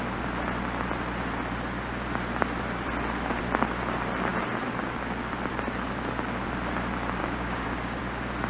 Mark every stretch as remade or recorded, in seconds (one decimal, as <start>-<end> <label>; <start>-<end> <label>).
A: 0.0-7.2 recorded; 7.2-8.0 remade; 8.0-8.5 recorded